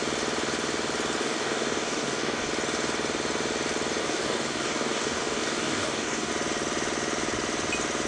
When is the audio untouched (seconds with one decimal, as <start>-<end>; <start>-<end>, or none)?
0.0-1.2; 2.5-4.0; 6.3-8.1